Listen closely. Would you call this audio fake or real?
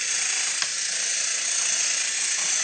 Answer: real